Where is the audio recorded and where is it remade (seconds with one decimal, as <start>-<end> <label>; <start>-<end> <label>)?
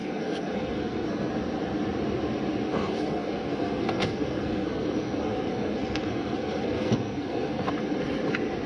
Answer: 0.0-1.3 remade; 1.3-2.7 recorded; 2.7-7.7 remade; 7.7-8.7 recorded